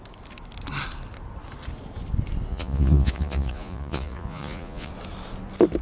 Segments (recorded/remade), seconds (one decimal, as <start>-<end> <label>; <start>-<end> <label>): 0.0-2.5 recorded; 2.5-4.9 remade; 4.9-5.8 recorded